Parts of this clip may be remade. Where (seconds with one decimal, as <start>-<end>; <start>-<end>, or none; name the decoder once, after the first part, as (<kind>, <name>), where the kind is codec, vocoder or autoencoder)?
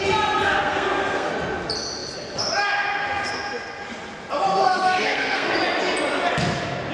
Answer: 0.4-1.3 (codec, SNAC); 4.6-5.5